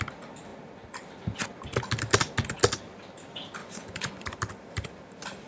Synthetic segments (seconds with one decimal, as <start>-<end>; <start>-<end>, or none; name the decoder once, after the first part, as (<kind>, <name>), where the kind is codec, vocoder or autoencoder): 3.6-4.4 (vocoder, Vocos)